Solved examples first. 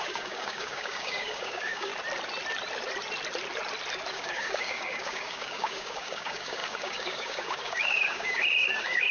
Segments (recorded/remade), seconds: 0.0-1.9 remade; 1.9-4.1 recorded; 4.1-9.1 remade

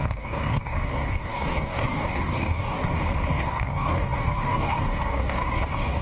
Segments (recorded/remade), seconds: 0.0-2.8 remade; 2.8-3.3 recorded; 3.3-6.0 remade